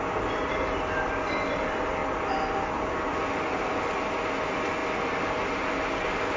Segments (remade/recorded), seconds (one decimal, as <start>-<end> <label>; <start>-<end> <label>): 0.0-6.4 recorded